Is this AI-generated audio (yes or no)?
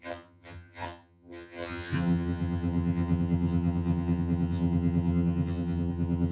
yes